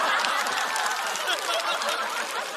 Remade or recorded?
recorded